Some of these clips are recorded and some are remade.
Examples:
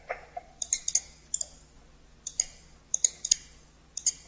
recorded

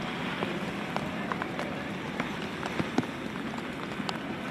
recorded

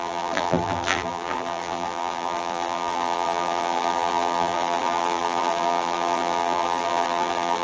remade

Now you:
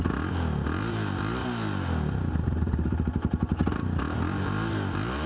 recorded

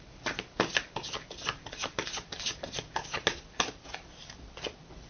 recorded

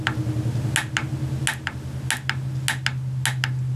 recorded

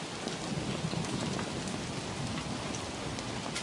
recorded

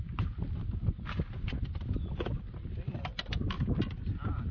recorded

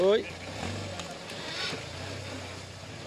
recorded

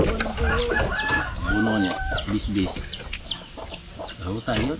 recorded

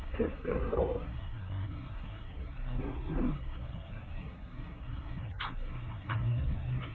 remade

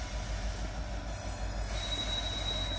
recorded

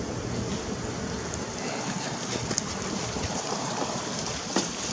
recorded